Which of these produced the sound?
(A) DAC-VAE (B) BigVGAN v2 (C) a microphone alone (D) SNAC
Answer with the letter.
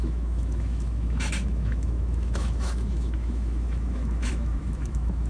A